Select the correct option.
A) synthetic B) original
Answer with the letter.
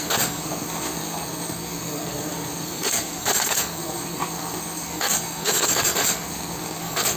A